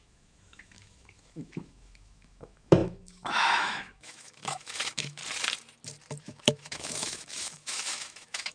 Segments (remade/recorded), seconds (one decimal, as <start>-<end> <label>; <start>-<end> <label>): 0.0-5.2 remade; 5.2-6.2 recorded; 6.2-8.5 remade